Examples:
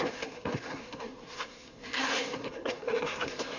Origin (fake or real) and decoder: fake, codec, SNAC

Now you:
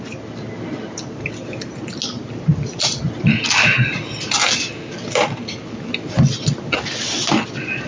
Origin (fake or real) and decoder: real